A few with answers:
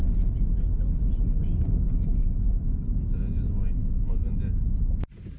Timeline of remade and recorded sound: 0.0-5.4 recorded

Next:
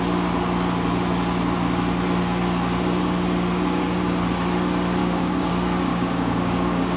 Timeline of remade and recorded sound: 0.0-5.0 recorded; 5.0-5.5 remade; 5.5-5.9 recorded; 5.9-7.0 remade

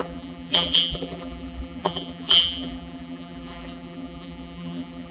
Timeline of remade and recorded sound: 0.0-5.1 remade

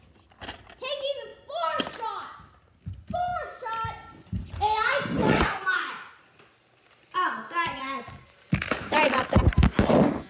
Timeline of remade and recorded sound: 0.0-10.3 recorded

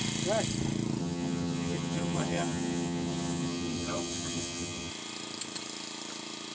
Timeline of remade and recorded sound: 0.0-1.0 recorded; 1.0-4.9 remade; 4.9-6.5 recorded

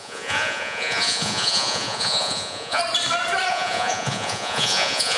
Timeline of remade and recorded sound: 0.0-2.8 remade; 2.8-3.5 recorded; 3.5-5.2 remade

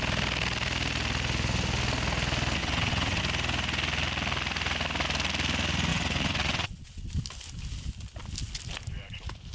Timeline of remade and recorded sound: 0.0-2.6 recorded; 2.6-3.2 remade; 3.2-5.9 recorded; 5.9-7.1 remade; 7.1-9.5 recorded